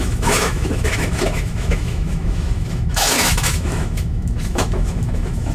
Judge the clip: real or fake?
fake